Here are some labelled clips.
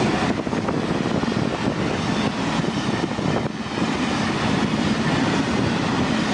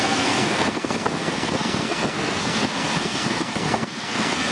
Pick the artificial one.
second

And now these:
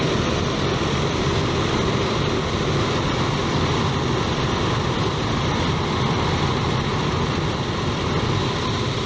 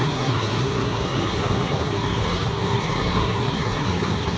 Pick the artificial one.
second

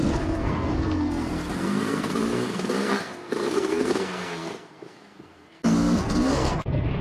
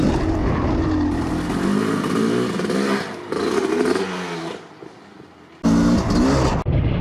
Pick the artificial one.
first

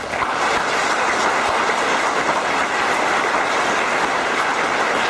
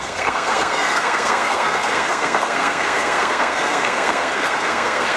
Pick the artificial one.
second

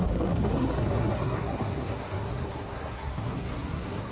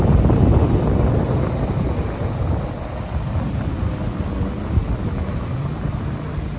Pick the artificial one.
first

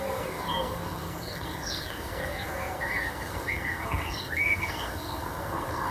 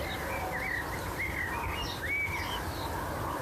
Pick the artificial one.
first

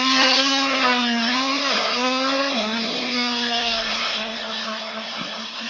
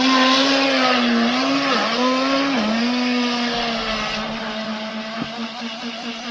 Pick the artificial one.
first